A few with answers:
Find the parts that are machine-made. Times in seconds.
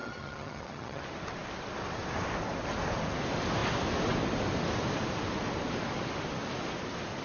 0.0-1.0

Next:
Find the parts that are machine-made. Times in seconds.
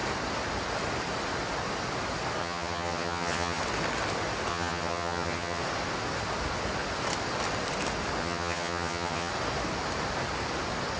2.4-3.6; 4.5-5.6; 8.2-9.3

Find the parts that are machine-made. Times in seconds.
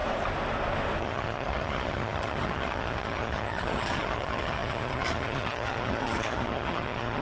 1.0-7.2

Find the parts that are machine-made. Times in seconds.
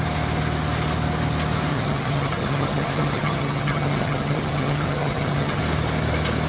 1.7-5.6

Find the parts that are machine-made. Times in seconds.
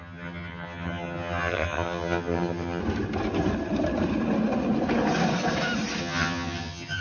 0.0-2.8; 6.0-7.0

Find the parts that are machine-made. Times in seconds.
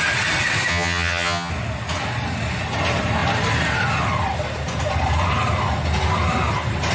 0.7-1.5